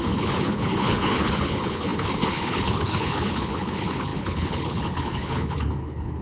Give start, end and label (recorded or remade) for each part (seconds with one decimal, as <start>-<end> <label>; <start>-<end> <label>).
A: 0.0-6.2 remade